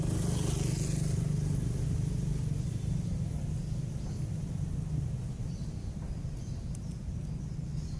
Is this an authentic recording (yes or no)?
yes